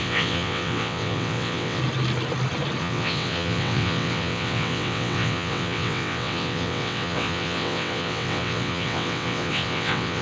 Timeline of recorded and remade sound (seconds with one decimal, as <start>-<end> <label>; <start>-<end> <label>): 0.0-1.8 remade; 1.8-2.8 recorded; 2.8-10.2 remade